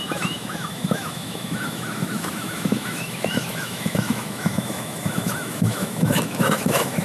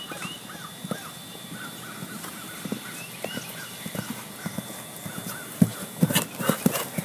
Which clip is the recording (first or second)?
second